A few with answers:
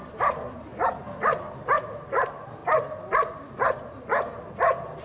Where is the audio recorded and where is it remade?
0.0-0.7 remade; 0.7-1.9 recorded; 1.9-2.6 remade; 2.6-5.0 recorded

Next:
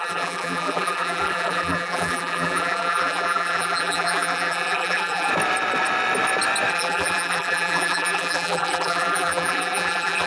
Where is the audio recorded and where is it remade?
0.0-5.3 remade; 5.3-6.7 recorded; 6.7-10.3 remade

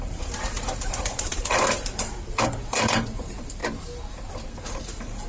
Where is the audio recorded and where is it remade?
0.0-3.6 remade; 3.6-4.6 recorded; 4.6-5.3 remade

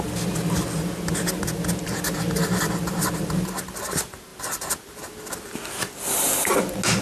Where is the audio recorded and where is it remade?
0.0-7.0 recorded

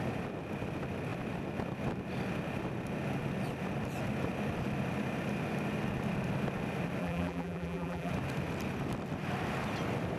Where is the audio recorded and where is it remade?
0.0-7.0 recorded; 7.0-8.1 remade; 8.1-10.2 recorded

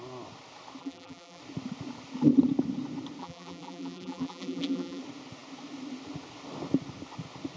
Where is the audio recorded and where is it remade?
0.0-0.8 recorded; 0.8-1.4 remade; 1.4-3.2 recorded; 3.2-5.0 remade; 5.0-7.6 recorded

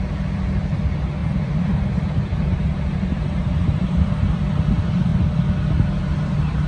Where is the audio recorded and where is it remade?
0.0-1.2 recorded; 1.2-4.4 remade; 4.4-6.0 recorded; 6.0-6.7 remade